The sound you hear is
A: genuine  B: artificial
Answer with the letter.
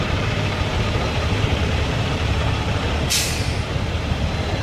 B